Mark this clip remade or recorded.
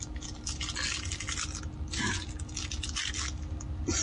recorded